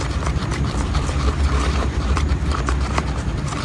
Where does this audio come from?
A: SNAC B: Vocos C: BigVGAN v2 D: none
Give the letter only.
C